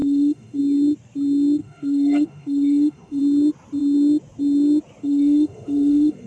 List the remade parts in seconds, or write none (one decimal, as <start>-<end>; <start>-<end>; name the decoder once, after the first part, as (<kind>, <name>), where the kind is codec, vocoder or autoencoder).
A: 0.0-0.6 (autoencoder, DAC-VAE); 1.6-3.2; 5.0-6.3